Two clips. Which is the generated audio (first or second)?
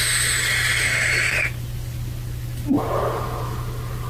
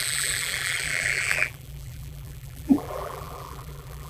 second